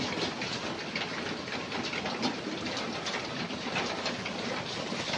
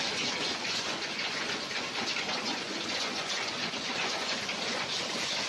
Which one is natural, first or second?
first